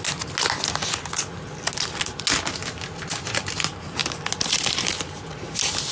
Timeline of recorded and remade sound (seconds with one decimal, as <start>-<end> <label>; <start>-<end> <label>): 0.0-5.9 recorded